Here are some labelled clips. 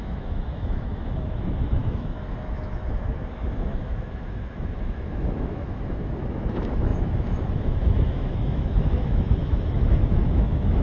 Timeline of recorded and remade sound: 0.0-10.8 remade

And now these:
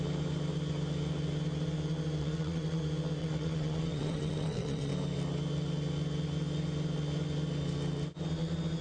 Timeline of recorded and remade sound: 0.0-2.2 recorded; 2.2-2.8 remade; 2.8-3.2 recorded; 3.2-4.9 remade; 4.9-8.8 recorded